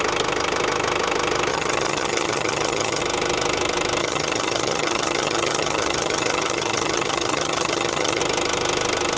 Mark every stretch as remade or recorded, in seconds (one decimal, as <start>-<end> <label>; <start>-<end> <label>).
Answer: 0.0-1.5 recorded; 1.5-3.0 remade; 3.0-4.0 recorded; 4.0-8.2 remade; 8.2-9.2 recorded